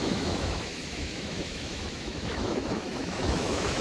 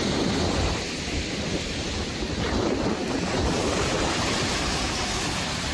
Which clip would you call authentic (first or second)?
second